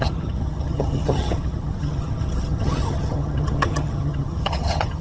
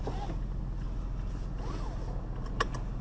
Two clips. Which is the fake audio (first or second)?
first